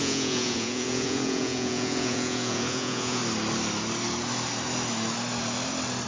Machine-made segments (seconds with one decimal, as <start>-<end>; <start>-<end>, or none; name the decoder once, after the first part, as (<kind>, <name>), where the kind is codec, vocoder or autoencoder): 0.0-3.2 (vocoder, Vocos)